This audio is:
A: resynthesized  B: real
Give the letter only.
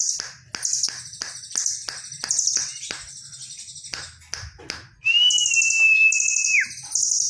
B